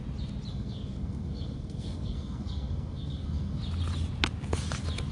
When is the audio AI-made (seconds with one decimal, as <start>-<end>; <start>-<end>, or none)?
0.5-3.6